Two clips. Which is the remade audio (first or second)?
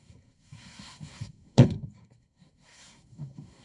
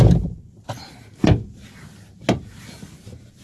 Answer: first